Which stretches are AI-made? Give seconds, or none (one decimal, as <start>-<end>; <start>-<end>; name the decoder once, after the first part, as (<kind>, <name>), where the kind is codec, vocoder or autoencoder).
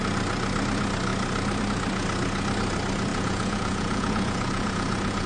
3.1-5.3 (vocoder, Vocos)